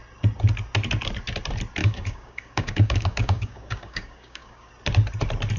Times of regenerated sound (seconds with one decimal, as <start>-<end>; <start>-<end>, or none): 1.8-4.7